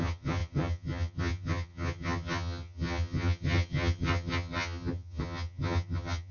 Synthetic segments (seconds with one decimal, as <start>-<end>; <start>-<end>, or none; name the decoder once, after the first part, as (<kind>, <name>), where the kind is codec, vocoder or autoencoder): 0.0-6.3 (vocoder, HiFi-GAN)